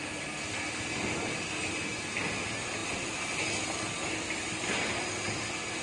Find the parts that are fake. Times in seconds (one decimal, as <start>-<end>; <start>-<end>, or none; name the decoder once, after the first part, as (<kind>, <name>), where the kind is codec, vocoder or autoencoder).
none